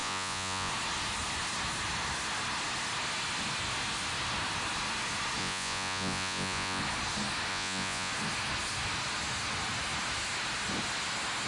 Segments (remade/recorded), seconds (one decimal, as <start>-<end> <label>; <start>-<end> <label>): 0.0-0.7 remade; 0.7-5.4 recorded; 5.4-6.8 remade; 6.8-7.5 recorded; 7.5-8.1 remade; 8.1-11.5 recorded